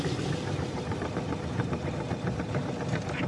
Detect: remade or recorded remade